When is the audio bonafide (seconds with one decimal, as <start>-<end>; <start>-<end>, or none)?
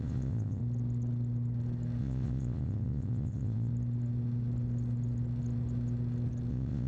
0.6-2.0; 3.7-6.5